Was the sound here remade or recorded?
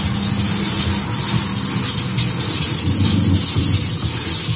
recorded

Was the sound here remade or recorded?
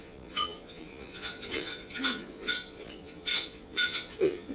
remade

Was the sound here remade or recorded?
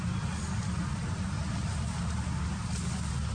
recorded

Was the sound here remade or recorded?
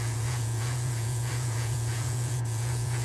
remade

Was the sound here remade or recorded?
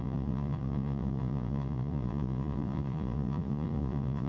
remade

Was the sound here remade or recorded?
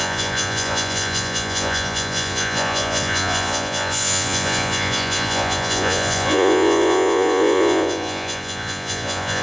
remade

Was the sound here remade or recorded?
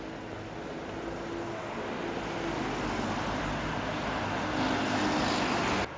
recorded